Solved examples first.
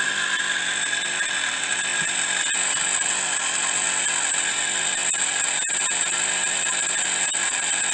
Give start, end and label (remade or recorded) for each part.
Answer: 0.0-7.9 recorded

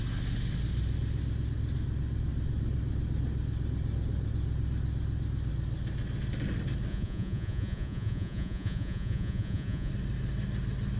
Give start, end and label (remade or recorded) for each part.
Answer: 0.0-6.9 recorded; 6.9-9.9 remade; 9.9-11.0 recorded

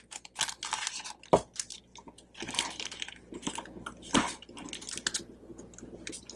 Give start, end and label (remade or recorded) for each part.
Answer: 0.0-6.4 recorded

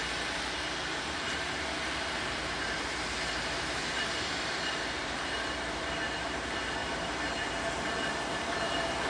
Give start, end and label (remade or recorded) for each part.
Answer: 0.0-9.1 remade